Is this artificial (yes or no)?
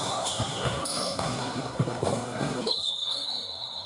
yes